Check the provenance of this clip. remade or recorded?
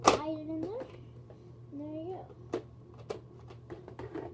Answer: recorded